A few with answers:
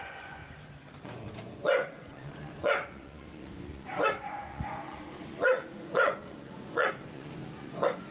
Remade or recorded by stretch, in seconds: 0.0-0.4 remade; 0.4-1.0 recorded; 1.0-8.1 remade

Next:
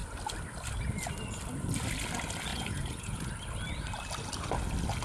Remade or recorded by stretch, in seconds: 0.0-2.5 recorded; 2.5-3.3 remade; 3.3-5.0 recorded

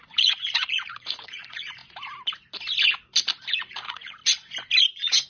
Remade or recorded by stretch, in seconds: 0.0-1.8 remade; 1.8-3.4 recorded; 3.4-4.2 remade; 4.2-4.8 recorded; 4.8-5.3 remade

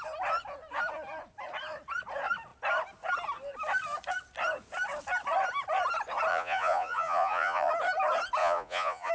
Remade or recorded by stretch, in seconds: 0.0-6.3 recorded; 6.3-7.7 remade; 7.7-8.4 recorded; 8.4-9.1 remade

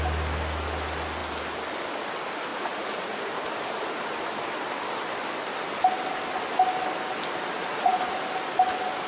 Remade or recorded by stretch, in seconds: 0.0-2.5 recorded; 2.5-3.2 remade; 3.2-7.6 recorded; 7.6-8.2 remade; 8.2-9.1 recorded

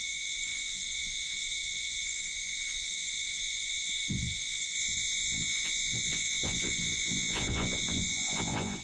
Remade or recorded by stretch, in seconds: 0.0-8.8 remade

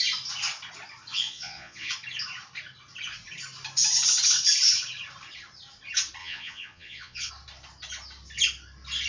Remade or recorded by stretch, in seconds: 0.0-1.1 recorded; 1.1-1.9 remade; 1.9-6.2 recorded; 6.2-7.3 remade; 7.3-9.1 recorded